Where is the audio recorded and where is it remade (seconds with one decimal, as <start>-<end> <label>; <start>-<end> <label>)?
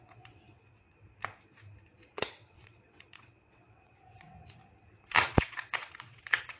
0.0-0.8 remade; 0.8-2.1 recorded; 2.1-4.6 remade; 4.6-5.2 recorded; 5.2-6.6 remade